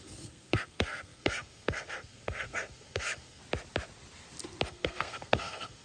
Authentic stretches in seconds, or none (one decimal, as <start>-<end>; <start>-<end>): 3.4-4.7